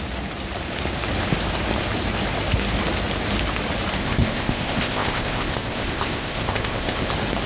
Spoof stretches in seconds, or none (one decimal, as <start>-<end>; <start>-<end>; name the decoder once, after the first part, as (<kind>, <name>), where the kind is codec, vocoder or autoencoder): 4.0-7.1 (codec, ZipCodec)